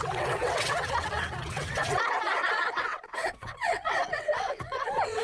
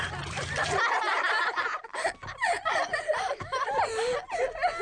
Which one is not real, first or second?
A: first